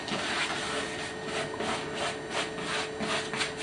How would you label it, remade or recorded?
recorded